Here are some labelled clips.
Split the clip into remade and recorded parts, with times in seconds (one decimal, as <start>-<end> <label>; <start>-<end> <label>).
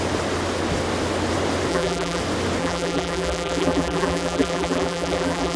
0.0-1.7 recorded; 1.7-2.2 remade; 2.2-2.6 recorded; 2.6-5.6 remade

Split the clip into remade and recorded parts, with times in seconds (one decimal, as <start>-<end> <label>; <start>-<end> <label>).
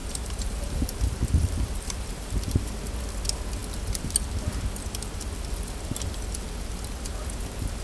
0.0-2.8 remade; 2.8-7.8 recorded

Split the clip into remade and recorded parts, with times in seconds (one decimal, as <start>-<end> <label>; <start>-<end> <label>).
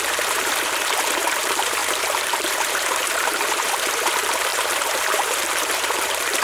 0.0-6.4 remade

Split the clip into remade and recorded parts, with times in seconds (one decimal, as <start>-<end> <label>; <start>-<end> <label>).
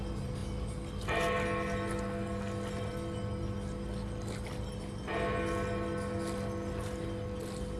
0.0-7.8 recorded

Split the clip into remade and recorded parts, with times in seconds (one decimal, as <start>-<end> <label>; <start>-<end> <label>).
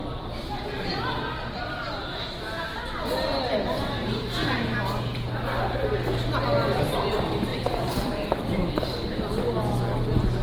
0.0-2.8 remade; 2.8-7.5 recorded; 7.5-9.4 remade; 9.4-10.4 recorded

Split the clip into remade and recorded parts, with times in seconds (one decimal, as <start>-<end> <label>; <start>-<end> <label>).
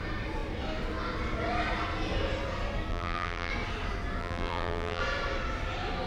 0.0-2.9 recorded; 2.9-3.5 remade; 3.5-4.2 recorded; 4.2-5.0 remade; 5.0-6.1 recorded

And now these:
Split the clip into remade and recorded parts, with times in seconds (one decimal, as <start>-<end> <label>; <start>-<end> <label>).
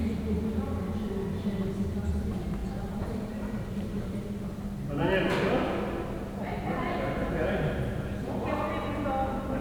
0.0-2.6 recorded; 2.6-4.4 remade; 4.4-9.6 recorded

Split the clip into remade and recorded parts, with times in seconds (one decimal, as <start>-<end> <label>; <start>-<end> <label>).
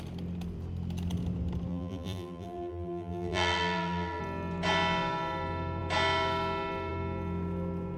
0.0-1.7 recorded; 1.7-4.2 remade; 4.2-8.0 recorded